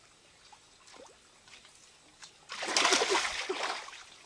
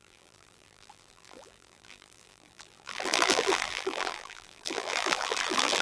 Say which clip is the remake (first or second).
second